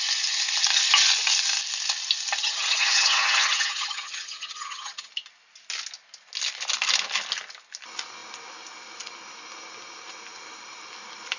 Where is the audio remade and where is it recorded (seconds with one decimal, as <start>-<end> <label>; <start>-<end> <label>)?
0.0-2.4 recorded; 2.4-5.1 remade; 5.1-11.4 recorded